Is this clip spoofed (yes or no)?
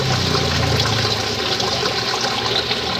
no